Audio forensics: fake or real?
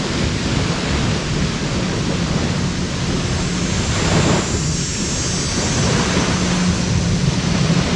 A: real